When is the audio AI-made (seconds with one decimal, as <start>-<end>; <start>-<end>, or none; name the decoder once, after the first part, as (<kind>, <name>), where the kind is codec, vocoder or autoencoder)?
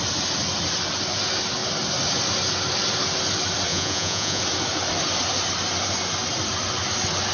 3.7-4.4 (vocoder, Vocos)